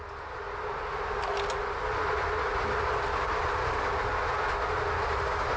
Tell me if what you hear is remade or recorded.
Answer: recorded